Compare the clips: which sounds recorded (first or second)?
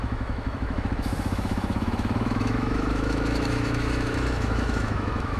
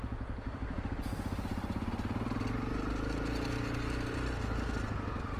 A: second